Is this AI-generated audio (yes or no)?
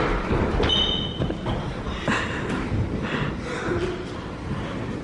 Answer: no